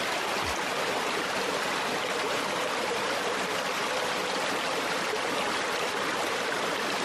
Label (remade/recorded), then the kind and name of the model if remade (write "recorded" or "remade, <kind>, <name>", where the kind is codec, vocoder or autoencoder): recorded